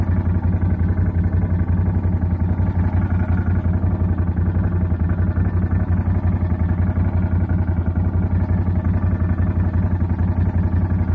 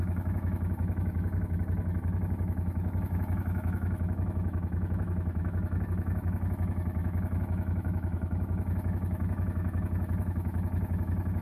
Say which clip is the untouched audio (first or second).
first